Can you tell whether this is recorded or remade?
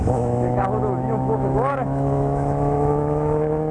remade